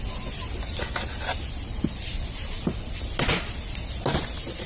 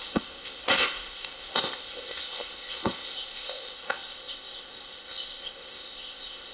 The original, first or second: first